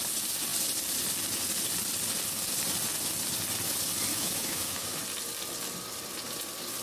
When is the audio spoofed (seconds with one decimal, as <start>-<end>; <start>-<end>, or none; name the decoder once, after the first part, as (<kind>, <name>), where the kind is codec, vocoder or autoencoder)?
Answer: 4.1-5.0 (autoencoder, DAC-VAE)